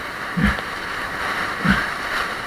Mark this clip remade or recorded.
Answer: recorded